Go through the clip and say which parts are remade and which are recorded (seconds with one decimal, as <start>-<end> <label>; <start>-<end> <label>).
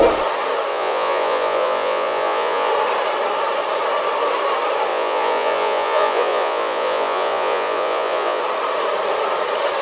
0.0-0.7 recorded; 0.7-2.7 remade; 2.7-4.9 recorded; 4.9-8.4 remade; 8.4-9.8 recorded